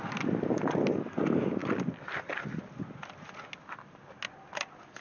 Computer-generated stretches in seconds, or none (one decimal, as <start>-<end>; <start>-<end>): none